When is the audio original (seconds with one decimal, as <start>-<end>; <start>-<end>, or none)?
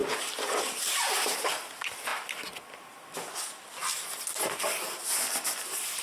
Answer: 1.5-3.9; 4.6-6.0